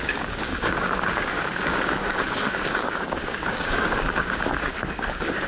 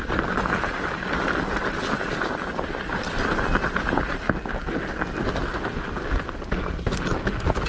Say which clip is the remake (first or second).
first